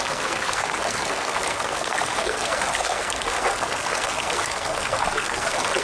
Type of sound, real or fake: fake